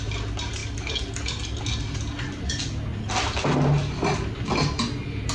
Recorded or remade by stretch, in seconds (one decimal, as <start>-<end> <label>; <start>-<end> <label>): 0.0-5.3 recorded